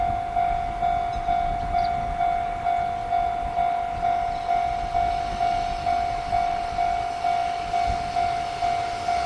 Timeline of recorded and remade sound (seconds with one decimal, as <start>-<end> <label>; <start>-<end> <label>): 0.0-9.3 recorded